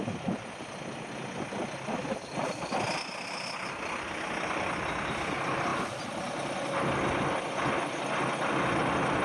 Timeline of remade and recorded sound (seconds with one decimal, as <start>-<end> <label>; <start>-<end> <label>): 0.0-9.2 recorded

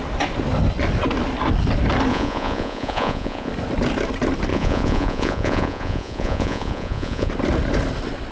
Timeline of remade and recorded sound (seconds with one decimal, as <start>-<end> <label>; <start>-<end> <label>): 0.0-2.1 recorded; 2.1-3.5 remade; 3.5-4.5 recorded; 4.5-7.3 remade; 7.3-8.3 recorded

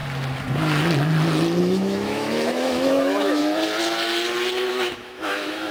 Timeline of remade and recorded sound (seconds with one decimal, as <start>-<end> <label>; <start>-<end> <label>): 0.0-1.6 recorded; 1.6-3.4 remade; 3.4-4.7 recorded; 4.7-5.7 remade

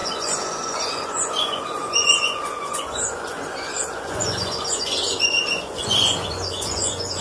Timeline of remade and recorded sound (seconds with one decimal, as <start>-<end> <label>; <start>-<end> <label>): 0.0-7.2 remade

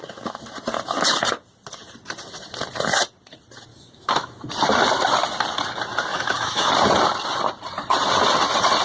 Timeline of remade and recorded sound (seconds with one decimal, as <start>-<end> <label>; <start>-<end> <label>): 0.0-3.7 recorded; 3.7-4.5 remade; 4.5-6.1 recorded; 6.1-6.7 remade; 6.7-8.8 recorded

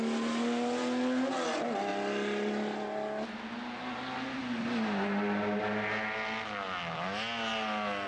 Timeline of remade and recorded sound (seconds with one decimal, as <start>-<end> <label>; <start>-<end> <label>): 0.0-8.1 recorded

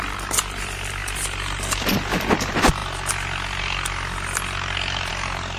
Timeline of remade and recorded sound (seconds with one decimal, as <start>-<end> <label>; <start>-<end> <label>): 0.0-5.6 recorded

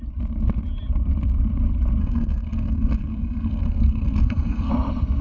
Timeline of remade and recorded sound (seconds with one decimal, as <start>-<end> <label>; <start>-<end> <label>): 0.0-2.0 recorded; 2.0-4.7 remade; 4.7-5.2 recorded